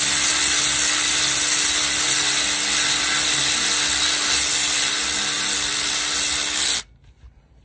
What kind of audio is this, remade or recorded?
recorded